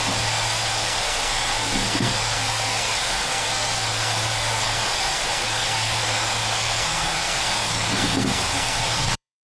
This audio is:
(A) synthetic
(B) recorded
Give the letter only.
A